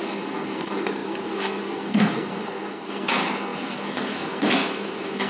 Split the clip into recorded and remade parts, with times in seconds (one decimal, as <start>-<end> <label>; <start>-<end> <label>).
0.0-5.3 remade